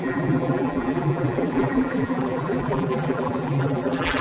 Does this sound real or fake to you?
fake